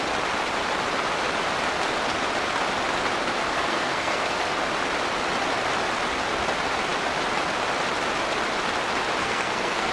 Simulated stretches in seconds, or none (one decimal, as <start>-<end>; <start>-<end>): 3.5-4.5; 9.2-9.9